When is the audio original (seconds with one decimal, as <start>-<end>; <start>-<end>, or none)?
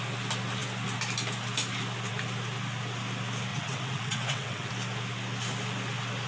0.0-3.5; 4.7-6.3